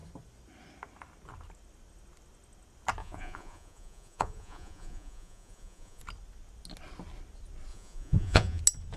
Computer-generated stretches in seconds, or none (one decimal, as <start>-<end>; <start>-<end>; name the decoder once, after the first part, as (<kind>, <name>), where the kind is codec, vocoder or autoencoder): 3.0-6.0 (vocoder, Vocos); 7.7-8.6